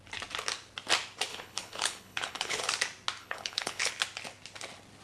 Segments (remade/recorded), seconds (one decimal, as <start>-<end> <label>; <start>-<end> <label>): 0.0-1.3 recorded; 1.3-2.7 remade; 2.7-3.2 recorded; 3.2-3.9 remade; 3.9-5.0 recorded